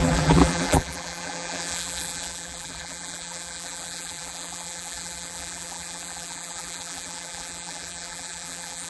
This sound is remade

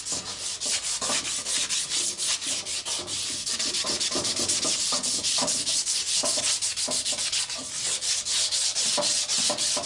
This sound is recorded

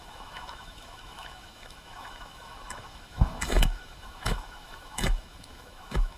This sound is remade